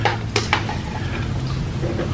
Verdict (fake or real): real